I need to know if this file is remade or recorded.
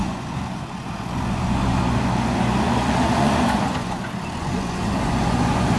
remade